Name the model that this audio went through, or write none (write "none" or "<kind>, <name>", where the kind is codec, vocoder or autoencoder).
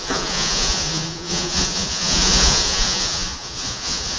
vocoder, Vocos